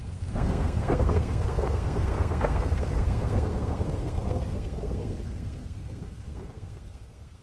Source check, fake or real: fake